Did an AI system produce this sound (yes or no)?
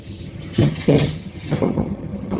yes